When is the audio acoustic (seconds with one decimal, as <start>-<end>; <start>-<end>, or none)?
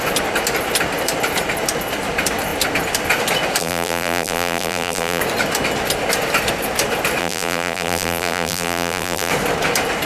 0.0-3.6; 5.2-7.2; 9.3-10.1